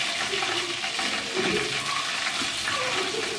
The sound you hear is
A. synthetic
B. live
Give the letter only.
B